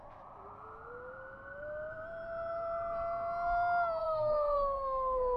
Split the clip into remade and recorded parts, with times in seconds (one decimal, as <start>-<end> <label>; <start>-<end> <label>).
0.0-4.0 recorded; 4.0-5.4 remade